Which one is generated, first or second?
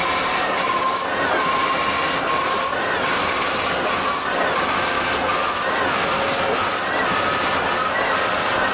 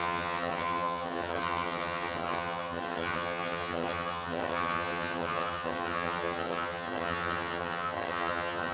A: second